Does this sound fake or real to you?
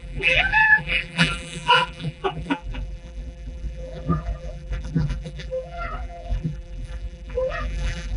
fake